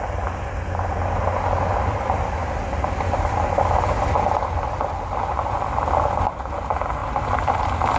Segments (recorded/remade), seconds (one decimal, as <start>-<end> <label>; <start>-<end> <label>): 0.0-2.4 recorded; 2.4-3.3 remade; 3.3-7.0 recorded; 7.0-7.6 remade; 7.6-8.0 recorded